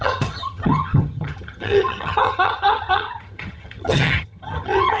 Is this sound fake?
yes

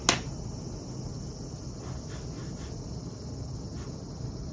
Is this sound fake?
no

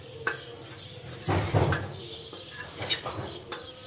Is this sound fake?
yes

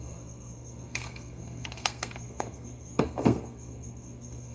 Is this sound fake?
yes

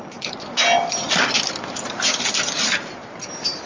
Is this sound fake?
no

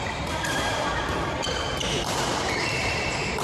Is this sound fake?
yes